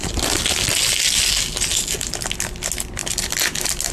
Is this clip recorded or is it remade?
recorded